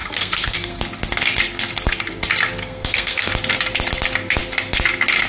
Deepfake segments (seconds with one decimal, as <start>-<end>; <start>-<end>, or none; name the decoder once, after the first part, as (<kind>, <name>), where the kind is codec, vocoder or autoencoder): 0.0-0.8 (codec, SNAC); 2.6-3.3